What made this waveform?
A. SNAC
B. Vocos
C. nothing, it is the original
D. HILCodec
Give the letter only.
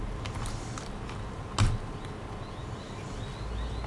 C